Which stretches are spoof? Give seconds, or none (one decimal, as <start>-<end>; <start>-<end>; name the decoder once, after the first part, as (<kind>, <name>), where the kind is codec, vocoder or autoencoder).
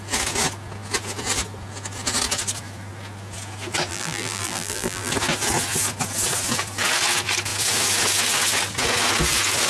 3.9-5.1 (vocoder, BigVGAN v2)